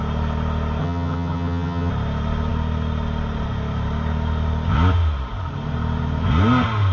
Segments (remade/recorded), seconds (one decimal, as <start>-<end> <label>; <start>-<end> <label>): 0.0-0.8 recorded; 0.8-1.9 remade; 1.9-6.9 recorded